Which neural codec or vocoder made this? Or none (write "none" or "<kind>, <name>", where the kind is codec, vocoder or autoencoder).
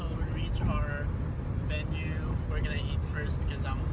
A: none